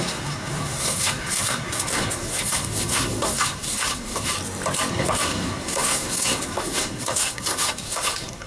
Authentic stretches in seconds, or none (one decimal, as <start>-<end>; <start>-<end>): 4.3-4.9